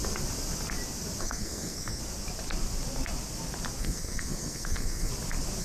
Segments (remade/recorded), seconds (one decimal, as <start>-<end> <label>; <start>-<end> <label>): 0.0-1.2 recorded; 1.2-2.0 remade; 2.0-3.8 recorded; 3.8-5.1 remade; 5.1-5.6 recorded